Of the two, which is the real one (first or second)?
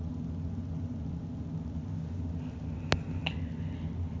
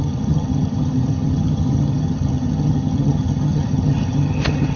first